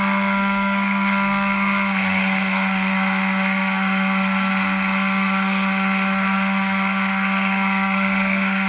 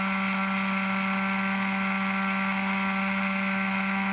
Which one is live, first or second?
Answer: second